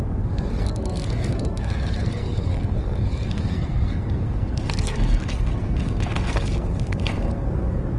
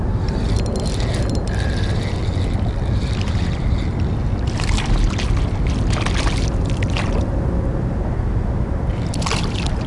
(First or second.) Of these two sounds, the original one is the second